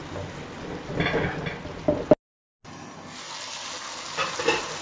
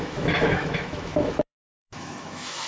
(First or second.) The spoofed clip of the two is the second